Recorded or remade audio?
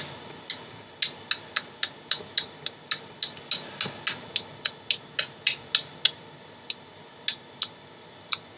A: recorded